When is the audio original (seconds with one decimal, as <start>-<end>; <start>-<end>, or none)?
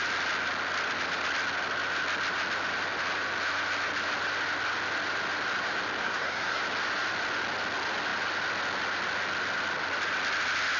0.0-6.0; 6.6-10.8